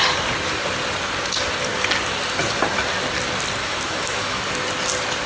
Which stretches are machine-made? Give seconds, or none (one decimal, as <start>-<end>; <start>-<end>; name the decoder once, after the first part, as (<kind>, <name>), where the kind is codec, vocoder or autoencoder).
3.6-4.4 (autoencoder, DAC-VAE)